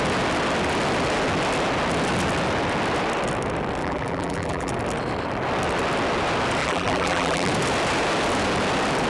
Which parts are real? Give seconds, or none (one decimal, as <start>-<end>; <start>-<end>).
0.0-3.8; 4.7-6.6; 7.5-9.1